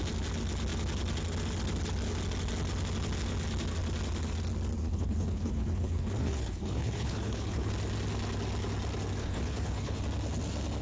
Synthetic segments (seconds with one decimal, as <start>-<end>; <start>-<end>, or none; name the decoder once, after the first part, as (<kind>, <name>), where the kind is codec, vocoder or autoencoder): 4.8-7.7 (codec, HILCodec); 9.2-10.0